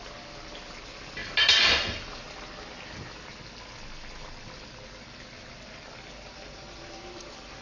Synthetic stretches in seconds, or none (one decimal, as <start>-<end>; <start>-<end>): none